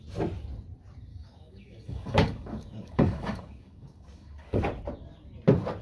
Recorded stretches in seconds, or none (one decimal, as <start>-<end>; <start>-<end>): 0.0-1.1; 4.6-5.8